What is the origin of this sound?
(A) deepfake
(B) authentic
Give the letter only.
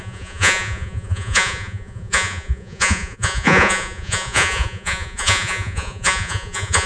A